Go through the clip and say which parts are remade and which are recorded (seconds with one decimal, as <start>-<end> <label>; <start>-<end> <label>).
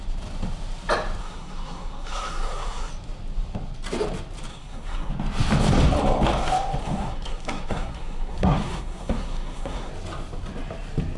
0.0-1.2 recorded; 1.2-2.9 remade; 2.9-4.5 recorded; 4.5-5.1 remade; 5.1-6.8 recorded; 6.8-9.9 remade; 9.9-11.2 recorded